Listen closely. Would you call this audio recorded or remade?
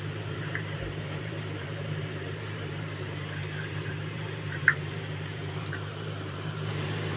remade